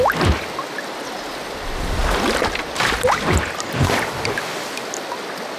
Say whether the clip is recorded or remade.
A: recorded